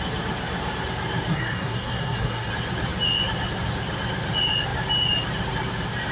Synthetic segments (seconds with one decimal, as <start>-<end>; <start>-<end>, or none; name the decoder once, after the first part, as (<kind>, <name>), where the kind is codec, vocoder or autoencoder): 1.3-2.5 (codec, SNAC)